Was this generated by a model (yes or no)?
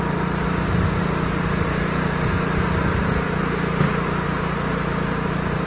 no